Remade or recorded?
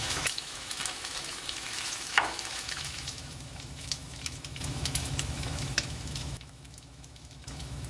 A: remade